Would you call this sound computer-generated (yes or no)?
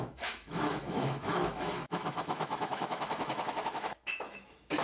yes